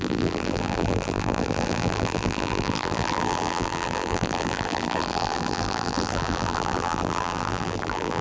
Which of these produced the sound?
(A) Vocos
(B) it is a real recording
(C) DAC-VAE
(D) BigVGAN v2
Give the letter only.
D